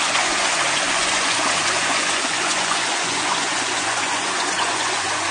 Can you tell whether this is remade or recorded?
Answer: remade